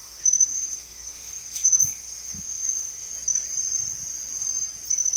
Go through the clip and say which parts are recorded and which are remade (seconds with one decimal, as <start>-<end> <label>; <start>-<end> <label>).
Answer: 0.0-3.1 remade; 3.1-5.2 recorded